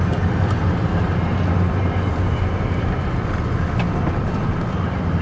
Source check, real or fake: real